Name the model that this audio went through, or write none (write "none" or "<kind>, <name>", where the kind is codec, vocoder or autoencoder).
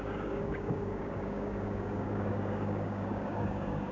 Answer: codec, DAC